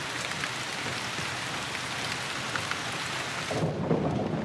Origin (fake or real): real